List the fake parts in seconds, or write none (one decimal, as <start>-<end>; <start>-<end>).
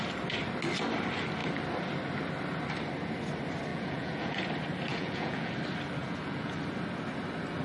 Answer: 3.7-4.4; 4.9-5.5; 6.0-6.6